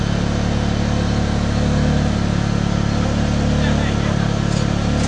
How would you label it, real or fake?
real